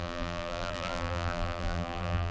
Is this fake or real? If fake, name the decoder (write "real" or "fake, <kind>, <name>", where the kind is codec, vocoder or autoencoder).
fake, vocoder, BigVGAN v2